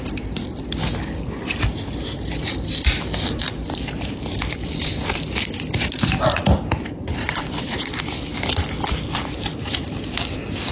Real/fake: real